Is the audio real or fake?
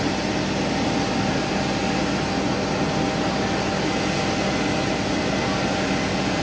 real